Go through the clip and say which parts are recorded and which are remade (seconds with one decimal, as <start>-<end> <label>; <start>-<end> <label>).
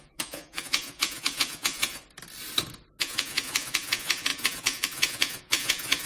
0.0-2.0 remade; 2.0-3.0 recorded; 3.0-6.1 remade